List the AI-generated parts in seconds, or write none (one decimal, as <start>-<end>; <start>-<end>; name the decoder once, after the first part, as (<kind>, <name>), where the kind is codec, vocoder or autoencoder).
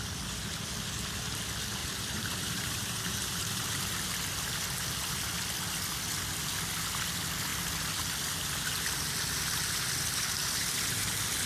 1.8-4.1 (vocoder, BigVGAN v2)